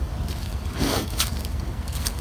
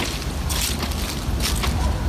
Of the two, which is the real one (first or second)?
second